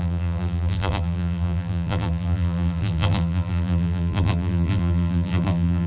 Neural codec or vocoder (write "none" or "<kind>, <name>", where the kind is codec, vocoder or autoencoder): vocoder, BigVGAN v2